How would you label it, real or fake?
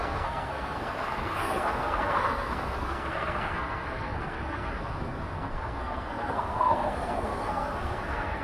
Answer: fake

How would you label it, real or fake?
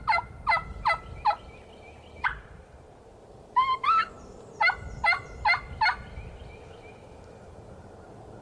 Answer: fake